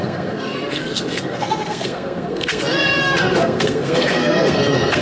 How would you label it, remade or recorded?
remade